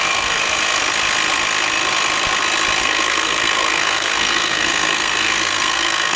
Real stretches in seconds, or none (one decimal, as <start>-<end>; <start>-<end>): 0.8-2.8